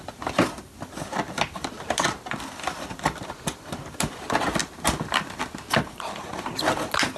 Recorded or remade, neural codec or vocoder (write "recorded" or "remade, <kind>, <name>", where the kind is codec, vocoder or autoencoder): recorded